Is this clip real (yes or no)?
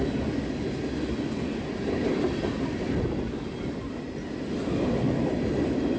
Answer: yes